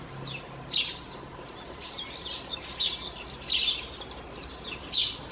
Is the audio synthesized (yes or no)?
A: no